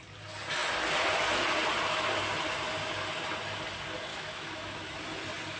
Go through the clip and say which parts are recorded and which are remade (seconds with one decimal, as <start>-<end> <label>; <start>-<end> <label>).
0.0-4.1 recorded; 4.1-5.0 remade; 5.0-5.6 recorded